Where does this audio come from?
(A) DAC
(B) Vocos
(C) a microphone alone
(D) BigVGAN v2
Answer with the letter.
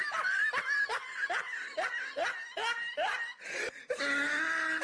C